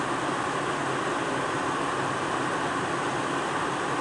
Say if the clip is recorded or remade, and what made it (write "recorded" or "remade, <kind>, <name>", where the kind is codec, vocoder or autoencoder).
recorded